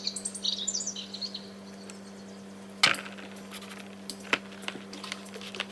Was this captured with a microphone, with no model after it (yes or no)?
yes